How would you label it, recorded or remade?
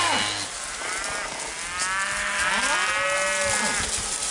recorded